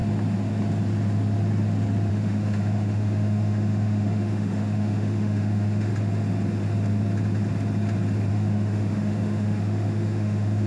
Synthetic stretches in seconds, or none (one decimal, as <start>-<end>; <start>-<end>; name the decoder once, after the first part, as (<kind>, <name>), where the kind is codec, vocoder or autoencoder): 2.1-5.9 (autoencoder, DAC-VAE); 8.3-10.7